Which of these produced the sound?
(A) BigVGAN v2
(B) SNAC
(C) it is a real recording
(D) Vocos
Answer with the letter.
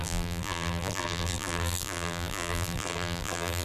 A